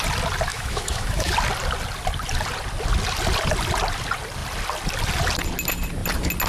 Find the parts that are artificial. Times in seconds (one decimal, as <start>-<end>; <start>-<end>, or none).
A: 0.5-1.3